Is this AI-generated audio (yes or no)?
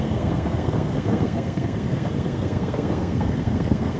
yes